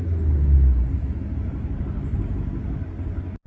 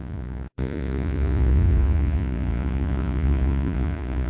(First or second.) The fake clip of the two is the second